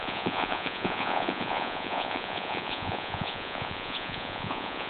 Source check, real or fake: fake